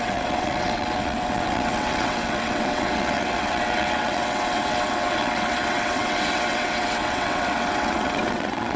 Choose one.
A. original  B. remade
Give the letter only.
B